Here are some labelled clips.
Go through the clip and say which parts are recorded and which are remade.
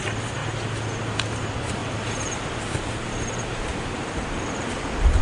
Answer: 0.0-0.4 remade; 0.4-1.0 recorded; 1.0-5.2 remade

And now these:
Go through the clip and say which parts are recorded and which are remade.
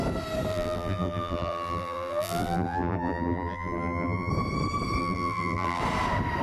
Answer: 0.0-0.5 recorded; 0.5-4.3 remade; 4.3-5.0 recorded; 5.0-5.8 remade; 5.8-6.4 recorded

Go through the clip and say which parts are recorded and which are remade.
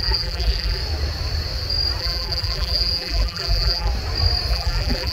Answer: 0.0-0.8 remade; 0.8-2.0 recorded; 2.0-3.9 remade; 3.9-4.5 recorded; 4.5-5.1 remade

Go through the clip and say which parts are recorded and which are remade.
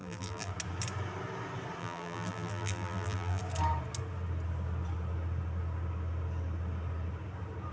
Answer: 0.0-0.5 remade; 0.5-1.8 recorded; 1.8-3.4 remade; 3.4-7.7 recorded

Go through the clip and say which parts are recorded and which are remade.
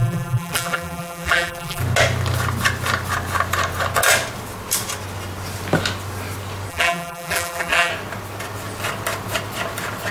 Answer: 0.0-1.8 remade; 1.8-6.7 recorded; 6.7-7.9 remade; 7.9-10.1 recorded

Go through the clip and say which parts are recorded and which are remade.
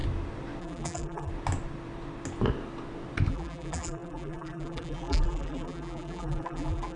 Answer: 0.0-0.6 recorded; 0.6-1.3 remade; 1.3-3.3 recorded; 3.3-7.0 remade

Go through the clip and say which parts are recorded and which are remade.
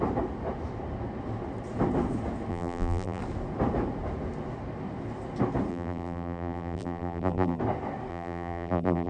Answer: 0.0-2.5 recorded; 2.5-3.2 remade; 3.2-5.7 recorded; 5.7-7.6 remade; 7.6-8.1 recorded; 8.1-9.1 remade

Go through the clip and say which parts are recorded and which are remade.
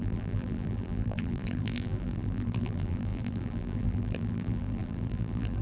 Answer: 0.0-5.6 remade